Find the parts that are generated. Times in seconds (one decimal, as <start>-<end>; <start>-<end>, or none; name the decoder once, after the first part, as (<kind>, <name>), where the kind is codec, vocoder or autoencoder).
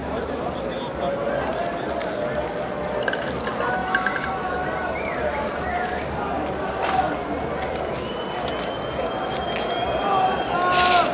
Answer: 0.0-0.7 (vocoder, BigVGAN v2); 3.8-6.1